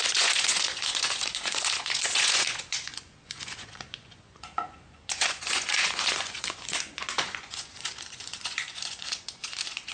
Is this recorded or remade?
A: remade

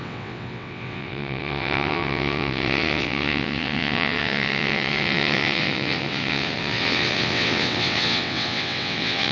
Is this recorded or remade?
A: remade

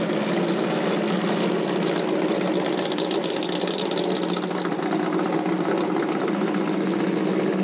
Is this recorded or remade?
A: recorded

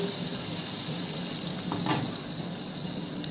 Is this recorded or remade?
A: recorded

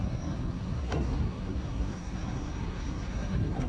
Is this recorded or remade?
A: remade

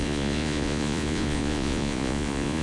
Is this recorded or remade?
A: remade